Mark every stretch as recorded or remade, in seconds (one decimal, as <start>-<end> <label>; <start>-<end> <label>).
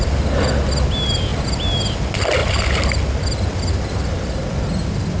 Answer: 0.0-5.2 recorded